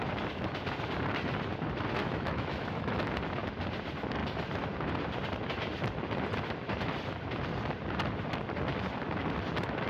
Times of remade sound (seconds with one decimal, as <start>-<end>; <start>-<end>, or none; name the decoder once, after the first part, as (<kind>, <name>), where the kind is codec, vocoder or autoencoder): 2.0-2.9 (autoencoder, DAC-VAE)